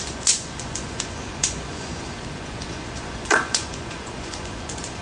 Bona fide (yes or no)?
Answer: no